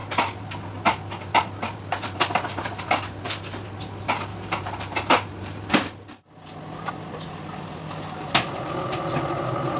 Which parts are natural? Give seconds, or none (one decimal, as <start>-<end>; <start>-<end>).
0.0-4.3; 5.7-9.8

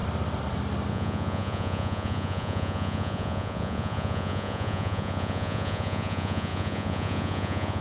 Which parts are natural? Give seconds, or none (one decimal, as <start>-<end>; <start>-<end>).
0.0-0.9

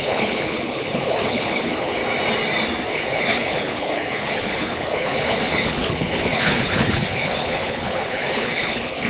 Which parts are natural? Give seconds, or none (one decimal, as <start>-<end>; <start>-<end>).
2.0-2.9

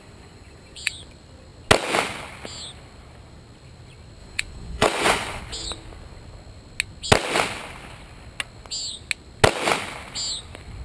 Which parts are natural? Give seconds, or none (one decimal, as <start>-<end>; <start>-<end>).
0.9-4.2; 5.4-10.8

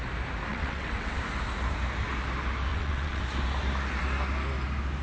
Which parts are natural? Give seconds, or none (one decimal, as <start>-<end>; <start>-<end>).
0.0-0.5; 1.2-2.7; 3.2-5.0

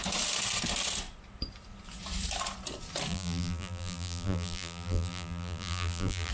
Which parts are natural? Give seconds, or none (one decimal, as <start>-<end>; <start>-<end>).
0.0-3.1

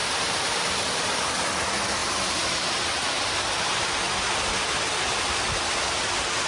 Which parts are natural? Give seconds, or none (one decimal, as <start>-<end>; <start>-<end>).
0.0-6.5